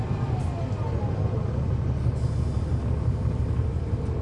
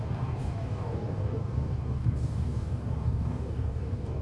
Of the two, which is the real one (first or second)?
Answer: first